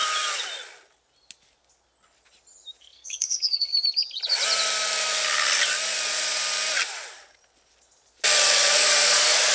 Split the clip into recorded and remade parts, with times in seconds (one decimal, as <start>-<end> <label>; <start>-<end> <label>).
0.0-2.8 recorded; 2.8-3.7 remade; 3.7-8.7 recorded; 8.7-9.5 remade